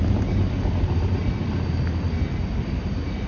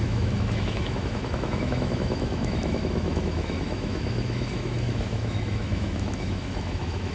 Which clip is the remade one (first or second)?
second